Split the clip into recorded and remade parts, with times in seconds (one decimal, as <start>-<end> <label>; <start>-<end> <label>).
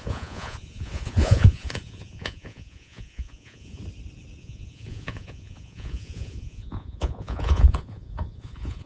0.0-3.8 remade; 3.8-4.4 recorded; 4.4-8.9 remade